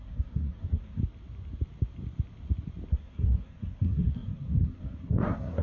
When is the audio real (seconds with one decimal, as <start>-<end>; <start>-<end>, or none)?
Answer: 1.0-2.9